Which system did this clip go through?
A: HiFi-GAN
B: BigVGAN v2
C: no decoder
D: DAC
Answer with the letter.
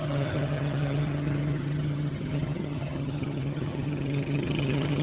A